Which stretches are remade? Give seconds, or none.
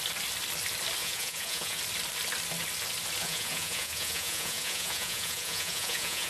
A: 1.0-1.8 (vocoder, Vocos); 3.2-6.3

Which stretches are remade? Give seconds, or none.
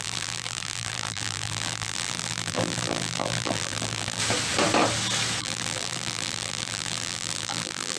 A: 0.0-4.2 (vocoder, BigVGAN v2); 5.4-8.0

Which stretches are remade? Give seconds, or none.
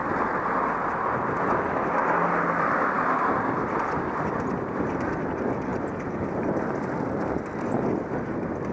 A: 5.7-6.9 (vocoder, BigVGAN v2)